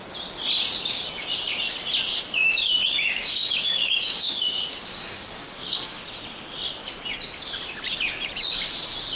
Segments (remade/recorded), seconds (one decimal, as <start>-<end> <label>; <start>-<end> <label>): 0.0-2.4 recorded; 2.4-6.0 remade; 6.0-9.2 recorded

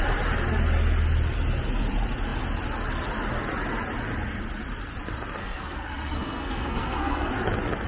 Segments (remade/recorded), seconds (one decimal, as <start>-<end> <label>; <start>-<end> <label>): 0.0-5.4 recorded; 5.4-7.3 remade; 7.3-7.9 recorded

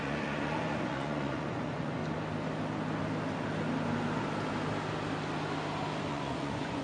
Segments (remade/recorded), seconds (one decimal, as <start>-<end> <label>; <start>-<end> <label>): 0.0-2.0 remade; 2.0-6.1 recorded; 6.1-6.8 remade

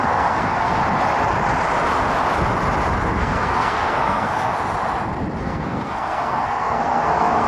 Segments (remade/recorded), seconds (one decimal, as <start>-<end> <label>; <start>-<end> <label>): 0.0-0.8 remade; 0.8-3.2 recorded; 3.2-4.5 remade; 4.5-5.4 recorded; 5.4-7.5 remade

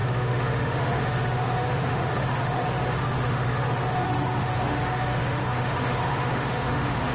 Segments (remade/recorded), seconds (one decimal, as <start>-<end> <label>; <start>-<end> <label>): 0.0-7.1 remade